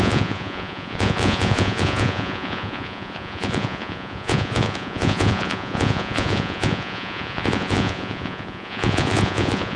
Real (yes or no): no